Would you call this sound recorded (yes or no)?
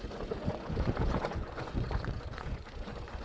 no